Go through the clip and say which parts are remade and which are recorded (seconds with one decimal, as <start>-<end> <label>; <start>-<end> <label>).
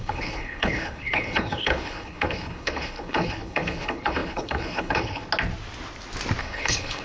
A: 0.0-5.2 remade; 5.2-6.4 recorded; 6.4-7.0 remade